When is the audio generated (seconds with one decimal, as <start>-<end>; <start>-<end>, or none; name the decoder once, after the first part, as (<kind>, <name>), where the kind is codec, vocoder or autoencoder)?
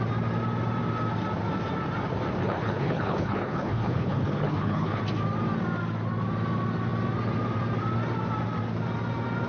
2.4-5.0 (codec, HILCodec)